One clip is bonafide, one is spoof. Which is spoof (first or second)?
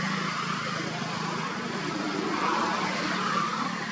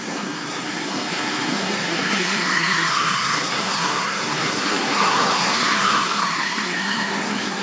second